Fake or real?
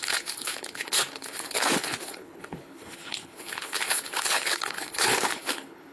fake